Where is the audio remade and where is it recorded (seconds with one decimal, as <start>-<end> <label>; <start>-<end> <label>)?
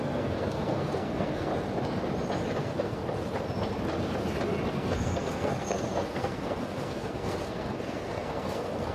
0.0-1.5 remade; 1.5-2.6 recorded; 2.6-3.0 remade; 3.0-4.7 recorded; 4.7-8.9 remade